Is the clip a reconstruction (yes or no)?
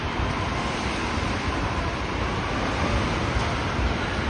no